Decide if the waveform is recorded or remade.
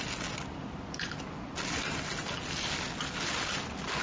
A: recorded